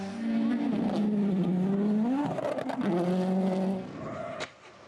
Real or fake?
real